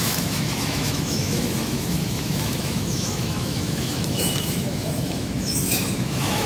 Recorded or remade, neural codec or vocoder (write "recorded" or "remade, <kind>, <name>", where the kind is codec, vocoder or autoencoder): remade, autoencoder, DAC-VAE